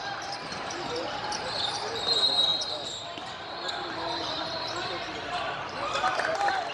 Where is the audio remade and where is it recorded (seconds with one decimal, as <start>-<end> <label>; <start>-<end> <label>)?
0.0-6.7 recorded